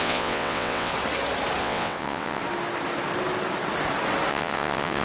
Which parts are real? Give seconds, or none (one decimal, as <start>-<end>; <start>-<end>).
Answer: 0.9-1.6; 2.4-4.3